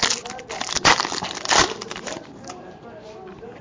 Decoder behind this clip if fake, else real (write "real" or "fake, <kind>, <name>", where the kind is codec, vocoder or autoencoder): real